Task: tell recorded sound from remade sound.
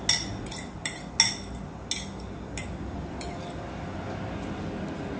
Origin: recorded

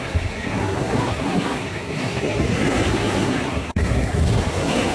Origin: remade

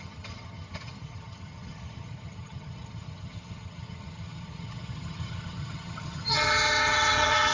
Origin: remade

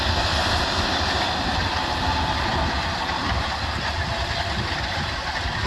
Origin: recorded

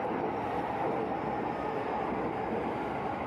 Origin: recorded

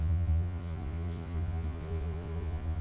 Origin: remade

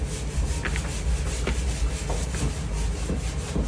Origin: recorded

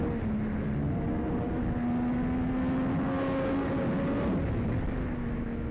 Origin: recorded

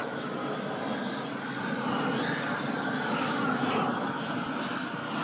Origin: recorded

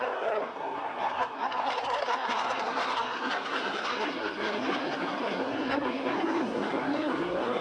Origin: remade